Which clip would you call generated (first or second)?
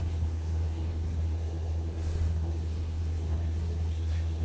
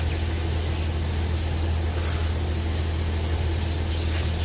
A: first